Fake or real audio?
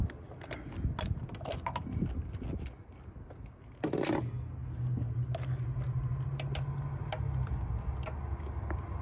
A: real